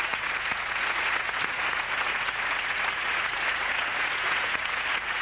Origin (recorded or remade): remade